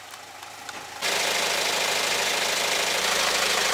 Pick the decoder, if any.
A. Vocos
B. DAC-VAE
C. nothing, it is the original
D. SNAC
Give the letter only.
C